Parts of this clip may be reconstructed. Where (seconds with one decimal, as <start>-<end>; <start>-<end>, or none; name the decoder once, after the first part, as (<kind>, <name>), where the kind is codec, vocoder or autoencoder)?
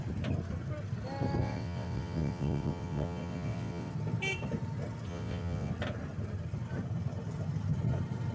1.4-3.9 (vocoder, WaveNeXt); 5.1-5.7